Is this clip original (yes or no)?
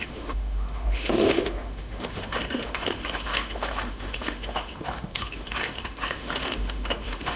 no